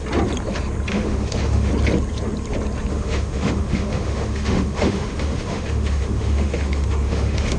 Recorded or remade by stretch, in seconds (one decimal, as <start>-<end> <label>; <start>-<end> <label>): 0.0-0.9 recorded; 0.9-1.7 remade; 1.7-2.9 recorded; 2.9-7.6 remade